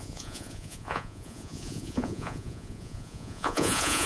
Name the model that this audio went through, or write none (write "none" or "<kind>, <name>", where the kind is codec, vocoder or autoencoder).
vocoder, Vocos